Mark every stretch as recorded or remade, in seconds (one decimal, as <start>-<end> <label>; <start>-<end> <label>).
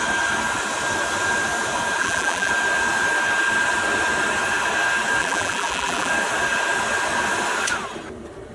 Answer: 0.0-2.0 recorded; 2.0-2.5 remade; 2.5-5.2 recorded; 5.2-6.1 remade; 6.1-8.5 recorded